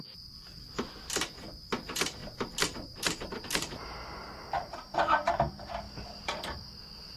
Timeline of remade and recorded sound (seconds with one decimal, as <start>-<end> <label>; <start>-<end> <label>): 0.0-2.2 recorded; 2.2-5.7 remade; 5.7-7.2 recorded